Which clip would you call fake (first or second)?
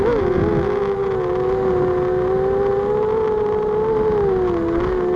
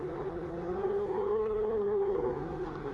second